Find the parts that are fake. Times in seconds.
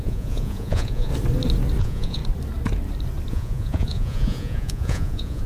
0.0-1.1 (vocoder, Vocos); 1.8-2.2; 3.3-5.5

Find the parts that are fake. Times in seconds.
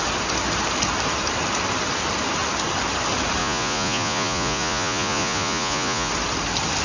3.4-6.1 (vocoder, Vocos)